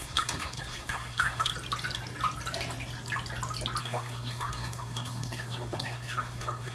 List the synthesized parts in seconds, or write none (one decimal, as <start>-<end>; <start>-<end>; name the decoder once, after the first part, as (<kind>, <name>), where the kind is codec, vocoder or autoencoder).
0.0-1.5 (codec, SNAC); 3.8-6.7